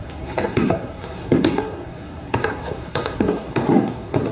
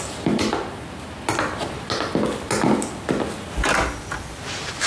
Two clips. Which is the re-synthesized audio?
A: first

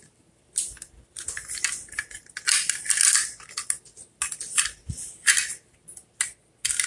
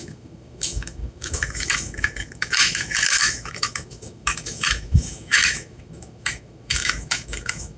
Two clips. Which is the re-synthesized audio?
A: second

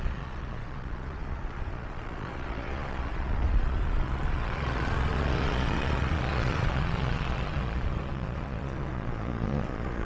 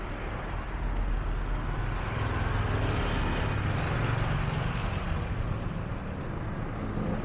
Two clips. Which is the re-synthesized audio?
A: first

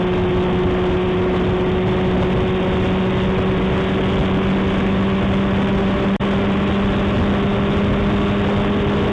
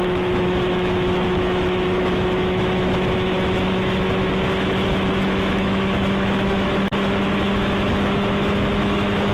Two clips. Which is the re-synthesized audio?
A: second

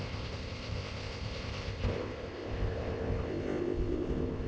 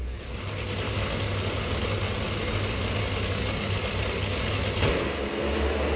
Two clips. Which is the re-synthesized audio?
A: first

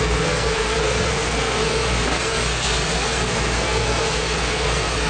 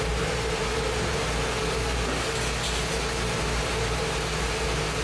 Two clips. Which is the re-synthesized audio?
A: first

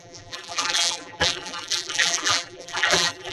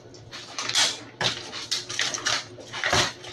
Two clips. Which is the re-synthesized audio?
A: first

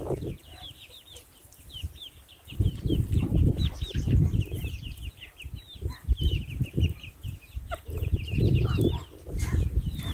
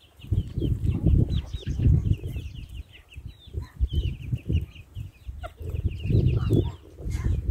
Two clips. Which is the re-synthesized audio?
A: first